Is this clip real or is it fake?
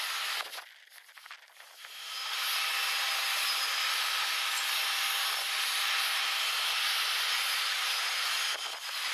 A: real